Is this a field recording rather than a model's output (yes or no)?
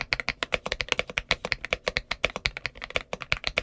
yes